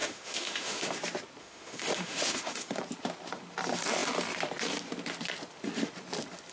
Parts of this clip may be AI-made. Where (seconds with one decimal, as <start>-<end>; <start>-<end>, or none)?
0.0-0.9; 1.4-2.7